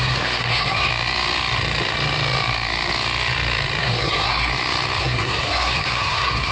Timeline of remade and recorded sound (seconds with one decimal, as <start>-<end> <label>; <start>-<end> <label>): 0.0-0.9 remade; 0.9-3.8 recorded; 3.8-4.5 remade; 4.5-5.0 recorded; 5.0-6.5 remade

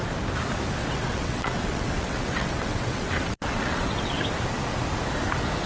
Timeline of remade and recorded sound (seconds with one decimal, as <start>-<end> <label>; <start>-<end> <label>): 0.0-0.8 recorded; 0.8-4.2 remade; 4.2-5.7 recorded

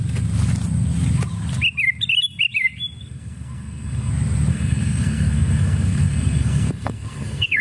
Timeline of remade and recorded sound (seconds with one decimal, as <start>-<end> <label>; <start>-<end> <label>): 0.0-3.0 recorded; 3.0-4.1 remade; 4.1-4.5 recorded; 4.5-7.6 remade

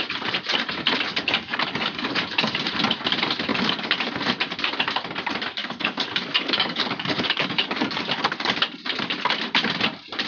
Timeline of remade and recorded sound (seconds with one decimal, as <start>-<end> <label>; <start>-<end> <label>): 0.0-1.1 recorded; 1.1-2.6 remade; 2.6-3.5 recorded; 3.5-4.1 remade; 4.1-5.6 recorded; 5.6-8.2 remade; 8.2-10.3 recorded

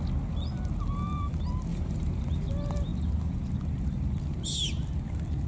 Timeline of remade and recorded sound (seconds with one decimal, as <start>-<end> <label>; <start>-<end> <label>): 0.0-1.7 recorded; 1.7-2.2 remade; 2.2-5.5 recorded